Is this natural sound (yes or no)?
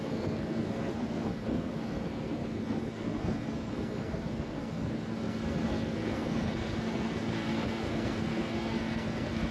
no